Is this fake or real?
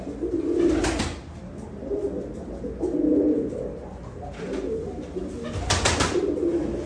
real